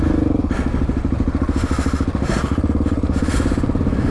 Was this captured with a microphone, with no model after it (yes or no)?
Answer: yes